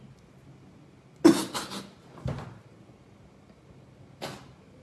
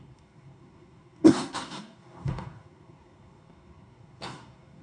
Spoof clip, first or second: second